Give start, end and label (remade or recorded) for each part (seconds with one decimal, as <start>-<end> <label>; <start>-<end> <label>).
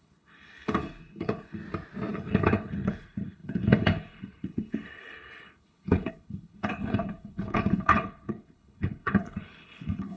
0.0-1.6 remade; 1.6-2.1 recorded; 2.1-10.2 remade